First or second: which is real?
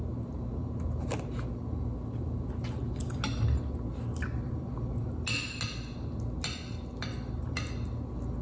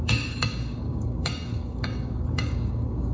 first